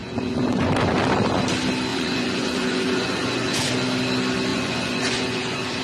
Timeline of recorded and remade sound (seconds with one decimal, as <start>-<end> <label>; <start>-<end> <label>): 0.0-0.7 remade; 0.7-1.9 recorded; 1.9-3.7 remade; 3.7-4.5 recorded; 4.5-5.8 remade

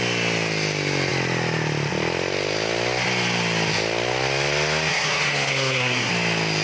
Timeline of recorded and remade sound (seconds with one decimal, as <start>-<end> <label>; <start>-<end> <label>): 0.0-4.9 recorded; 4.9-6.1 remade; 6.1-6.6 recorded

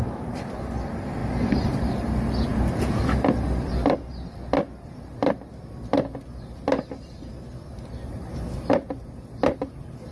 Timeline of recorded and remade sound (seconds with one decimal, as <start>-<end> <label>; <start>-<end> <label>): 0.0-2.5 recorded; 2.5-3.0 remade; 3.0-10.1 recorded

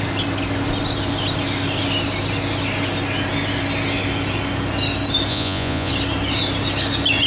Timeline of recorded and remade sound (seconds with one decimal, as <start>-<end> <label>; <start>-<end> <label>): 0.0-5.3 recorded; 5.3-5.9 remade; 5.9-7.3 recorded

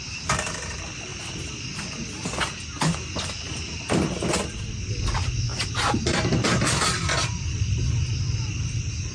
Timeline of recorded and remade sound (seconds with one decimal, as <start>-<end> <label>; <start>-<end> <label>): 0.0-9.1 recorded

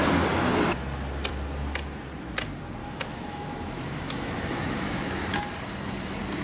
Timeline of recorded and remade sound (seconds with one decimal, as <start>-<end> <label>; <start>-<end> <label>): 0.0-2.8 recorded; 2.8-5.4 remade; 5.4-6.4 recorded

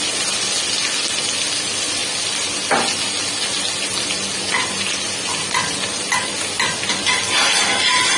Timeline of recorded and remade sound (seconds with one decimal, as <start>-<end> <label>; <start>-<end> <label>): 0.0-8.2 recorded